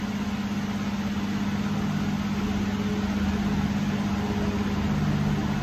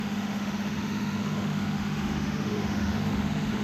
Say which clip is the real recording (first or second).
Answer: first